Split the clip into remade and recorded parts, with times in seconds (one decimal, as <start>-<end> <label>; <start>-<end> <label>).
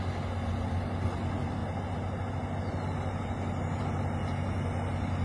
0.0-5.2 recorded